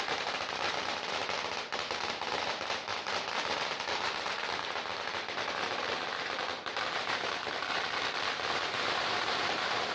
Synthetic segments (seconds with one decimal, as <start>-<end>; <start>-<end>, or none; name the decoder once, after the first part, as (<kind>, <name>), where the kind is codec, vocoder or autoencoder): 0.0-1.2 (vocoder, BigVGAN v2); 2.1-2.9; 3.6-9.9